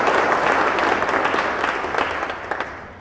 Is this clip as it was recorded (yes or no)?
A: yes